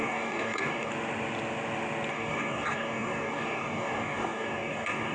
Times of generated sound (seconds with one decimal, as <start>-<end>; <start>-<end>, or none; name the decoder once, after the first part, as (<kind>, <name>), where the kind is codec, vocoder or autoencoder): 0.0-0.9 (codec, DAC); 2.1-5.1